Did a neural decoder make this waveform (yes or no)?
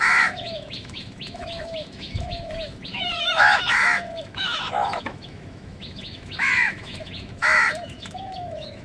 yes